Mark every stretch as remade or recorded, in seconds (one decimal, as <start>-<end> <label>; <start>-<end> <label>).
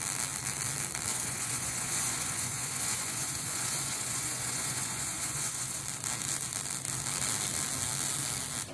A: 0.0-1.1 recorded; 1.1-5.8 remade; 5.8-8.7 recorded